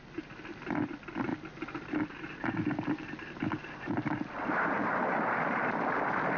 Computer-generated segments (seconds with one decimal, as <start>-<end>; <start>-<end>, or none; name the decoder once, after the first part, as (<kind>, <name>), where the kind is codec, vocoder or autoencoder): 0.0-1.3 (vocoder, BigVGAN v2); 5.1-6.4